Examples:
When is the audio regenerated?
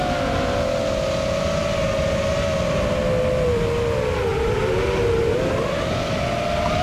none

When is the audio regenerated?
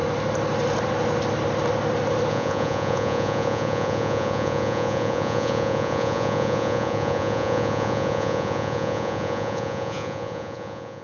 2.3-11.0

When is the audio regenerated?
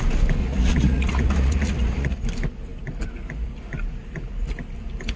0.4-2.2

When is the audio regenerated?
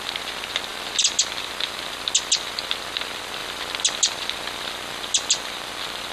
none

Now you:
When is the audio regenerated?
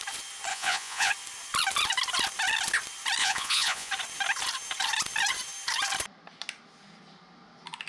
0.5-1.1; 3.2-3.9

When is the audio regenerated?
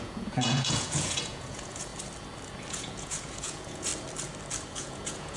0.0-1.9; 2.7-3.9; 4.7-5.4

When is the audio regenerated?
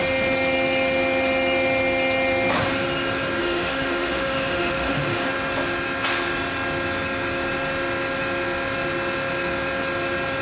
3.4-5.3